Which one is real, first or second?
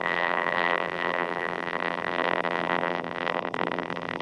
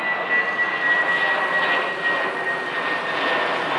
second